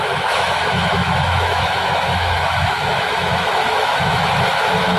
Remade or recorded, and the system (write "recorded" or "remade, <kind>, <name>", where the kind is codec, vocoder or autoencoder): remade, autoencoder, DAC-VAE